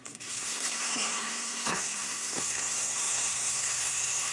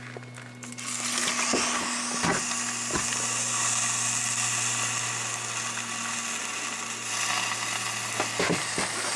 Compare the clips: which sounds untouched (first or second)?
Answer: second